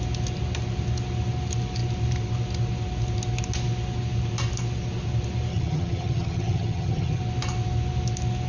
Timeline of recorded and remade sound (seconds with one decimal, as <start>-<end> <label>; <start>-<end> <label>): 0.0-5.5 recorded; 5.5-7.2 remade; 7.2-8.5 recorded